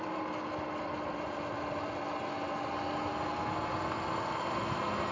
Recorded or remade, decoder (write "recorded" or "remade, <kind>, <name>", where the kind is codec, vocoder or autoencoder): recorded